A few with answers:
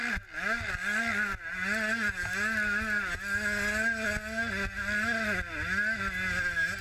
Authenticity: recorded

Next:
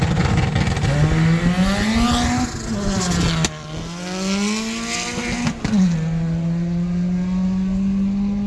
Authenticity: recorded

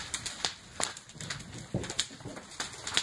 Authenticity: recorded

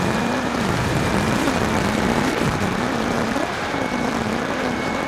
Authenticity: remade